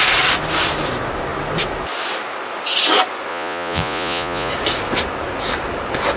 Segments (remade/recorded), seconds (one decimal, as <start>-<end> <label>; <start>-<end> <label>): 0.0-3.3 recorded; 3.3-4.5 remade; 4.5-6.2 recorded